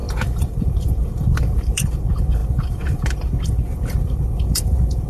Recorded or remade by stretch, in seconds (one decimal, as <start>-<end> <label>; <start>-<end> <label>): 0.0-5.1 remade